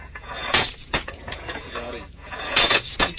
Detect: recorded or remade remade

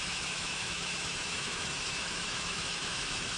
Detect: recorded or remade remade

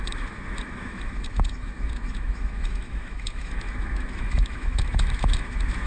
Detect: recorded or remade remade